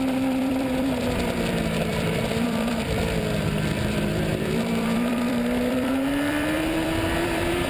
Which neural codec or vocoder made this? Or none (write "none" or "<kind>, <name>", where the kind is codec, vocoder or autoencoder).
vocoder, BigVGAN v2